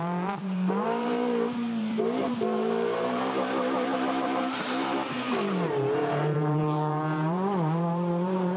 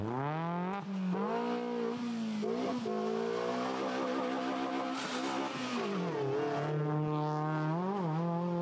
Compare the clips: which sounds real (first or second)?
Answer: second